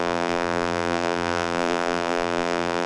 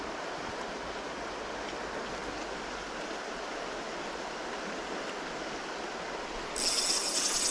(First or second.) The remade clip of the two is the first